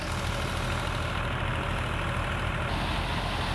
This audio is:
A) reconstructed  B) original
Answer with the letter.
B